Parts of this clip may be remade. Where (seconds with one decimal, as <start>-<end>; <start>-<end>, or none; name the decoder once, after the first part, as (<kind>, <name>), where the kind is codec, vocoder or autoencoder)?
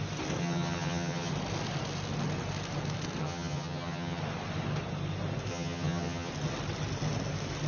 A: 0.4-1.3 (vocoder, HiFi-GAN); 3.2-4.2; 5.5-6.3